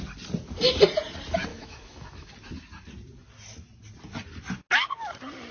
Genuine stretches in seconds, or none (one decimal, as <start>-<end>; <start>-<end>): 0.0-1.5; 2.3-5.5